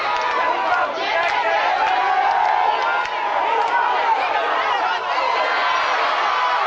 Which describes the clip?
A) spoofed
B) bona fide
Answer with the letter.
B